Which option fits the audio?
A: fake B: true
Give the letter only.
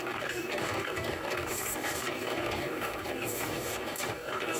A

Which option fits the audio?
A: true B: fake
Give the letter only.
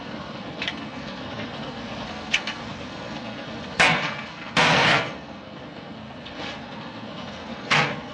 B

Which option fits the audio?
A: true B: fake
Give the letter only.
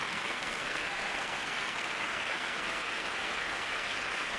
B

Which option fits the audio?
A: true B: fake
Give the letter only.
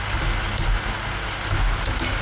B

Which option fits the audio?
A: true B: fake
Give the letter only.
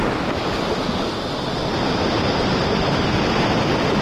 A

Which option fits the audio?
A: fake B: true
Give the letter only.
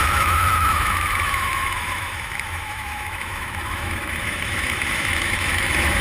A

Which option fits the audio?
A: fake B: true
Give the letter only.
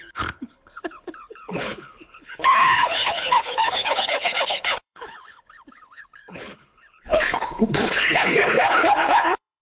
A